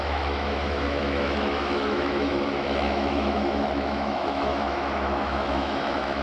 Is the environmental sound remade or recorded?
remade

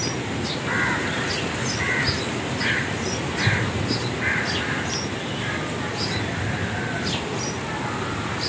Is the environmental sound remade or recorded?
recorded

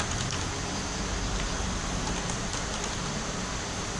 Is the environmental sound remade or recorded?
recorded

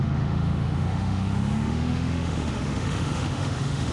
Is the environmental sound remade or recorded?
remade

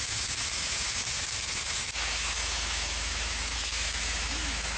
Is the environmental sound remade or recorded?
remade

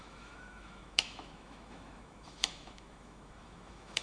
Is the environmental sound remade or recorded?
remade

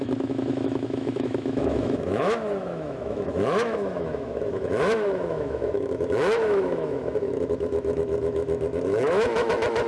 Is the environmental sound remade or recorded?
remade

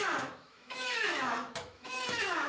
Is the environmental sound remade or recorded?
remade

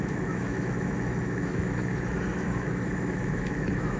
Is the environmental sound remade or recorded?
remade